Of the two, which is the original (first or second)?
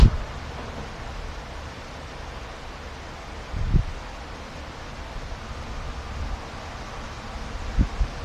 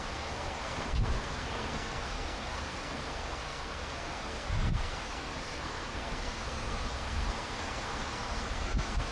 first